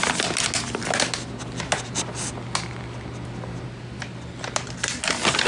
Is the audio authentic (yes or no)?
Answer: yes